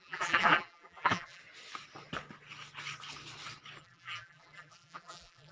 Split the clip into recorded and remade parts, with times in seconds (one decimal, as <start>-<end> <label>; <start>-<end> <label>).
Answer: 0.0-1.4 remade; 1.4-3.8 recorded; 3.8-5.5 remade